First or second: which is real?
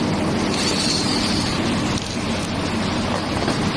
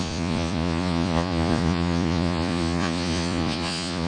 first